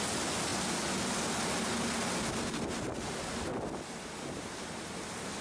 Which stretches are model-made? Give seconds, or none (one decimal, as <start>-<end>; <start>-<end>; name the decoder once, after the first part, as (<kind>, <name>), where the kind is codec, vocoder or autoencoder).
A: none